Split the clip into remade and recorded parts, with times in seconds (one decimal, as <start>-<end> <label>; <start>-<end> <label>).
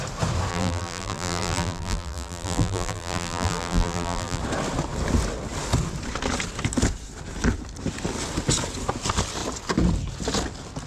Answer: 0.0-0.5 recorded; 0.5-4.4 remade; 4.4-10.9 recorded